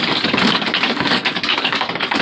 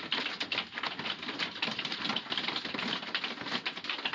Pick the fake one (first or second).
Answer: first